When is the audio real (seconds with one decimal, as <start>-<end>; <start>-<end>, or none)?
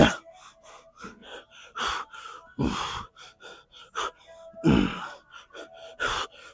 0.0-6.5